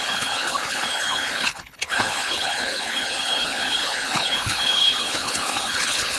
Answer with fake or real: fake